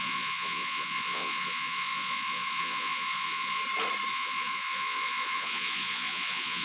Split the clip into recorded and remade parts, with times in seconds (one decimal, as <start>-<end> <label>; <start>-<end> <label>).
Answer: 0.0-3.6 remade; 3.6-4.1 recorded; 4.1-6.6 remade